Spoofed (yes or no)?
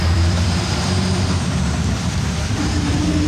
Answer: yes